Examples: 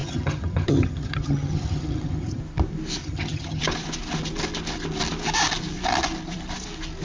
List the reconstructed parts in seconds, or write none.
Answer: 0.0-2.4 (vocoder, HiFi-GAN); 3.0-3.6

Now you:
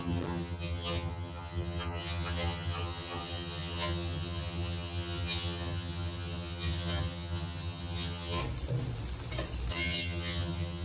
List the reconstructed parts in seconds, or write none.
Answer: 0.0-8.4 (vocoder, HiFi-GAN); 9.7-10.8